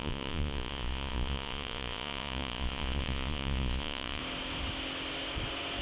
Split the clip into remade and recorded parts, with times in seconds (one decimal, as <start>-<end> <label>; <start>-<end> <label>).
0.0-4.2 remade; 4.2-5.8 recorded